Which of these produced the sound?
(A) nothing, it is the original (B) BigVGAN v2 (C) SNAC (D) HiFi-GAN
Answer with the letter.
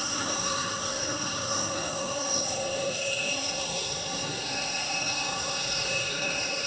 C